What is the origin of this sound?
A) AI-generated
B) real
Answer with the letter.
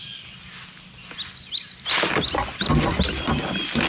B